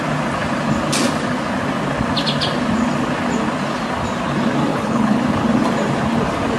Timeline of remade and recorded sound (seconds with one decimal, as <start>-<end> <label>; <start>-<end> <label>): 0.0-4.7 recorded; 4.7-5.2 remade; 5.2-6.6 recorded